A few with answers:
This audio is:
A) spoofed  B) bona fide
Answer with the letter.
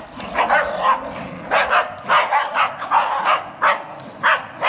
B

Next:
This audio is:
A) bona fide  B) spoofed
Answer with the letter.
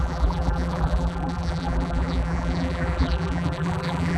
B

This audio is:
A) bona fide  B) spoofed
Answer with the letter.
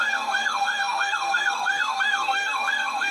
B